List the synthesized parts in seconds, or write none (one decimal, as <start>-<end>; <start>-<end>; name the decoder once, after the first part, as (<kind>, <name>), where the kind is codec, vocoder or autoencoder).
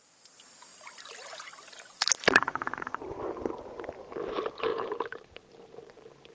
0.7-3.2 (vocoder, BigVGAN v2); 4.7-5.4